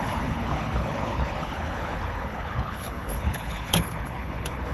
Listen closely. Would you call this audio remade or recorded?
remade